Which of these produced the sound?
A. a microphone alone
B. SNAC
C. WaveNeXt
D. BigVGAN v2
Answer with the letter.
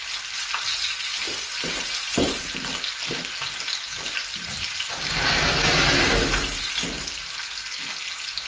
A